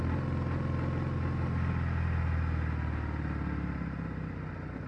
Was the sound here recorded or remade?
recorded